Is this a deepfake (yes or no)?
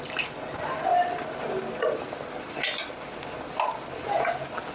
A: no